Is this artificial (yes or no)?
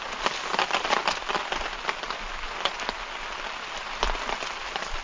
yes